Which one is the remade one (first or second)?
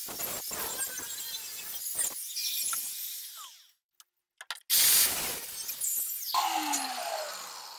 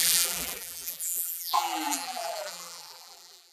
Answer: second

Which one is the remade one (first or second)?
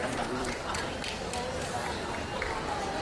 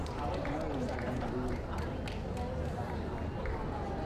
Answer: first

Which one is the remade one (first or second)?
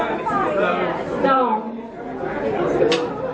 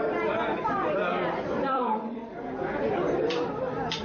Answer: second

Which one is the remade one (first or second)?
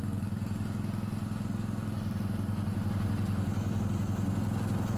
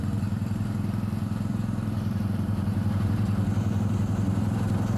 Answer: second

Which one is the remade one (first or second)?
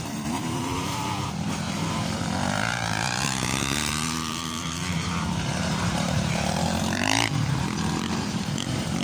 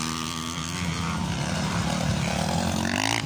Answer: first